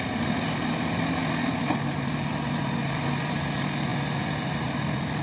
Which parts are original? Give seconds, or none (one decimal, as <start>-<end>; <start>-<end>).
0.0-1.6; 2.6-3.9